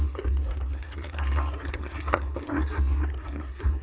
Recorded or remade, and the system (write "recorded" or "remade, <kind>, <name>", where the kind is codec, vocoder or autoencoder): remade, codec, SNAC